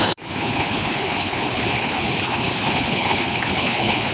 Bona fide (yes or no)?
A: no